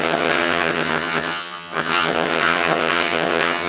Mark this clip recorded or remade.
remade